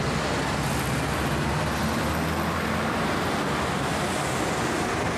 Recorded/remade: recorded